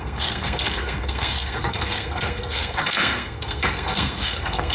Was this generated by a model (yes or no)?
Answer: yes